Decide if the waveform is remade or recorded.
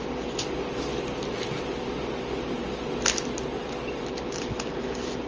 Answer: recorded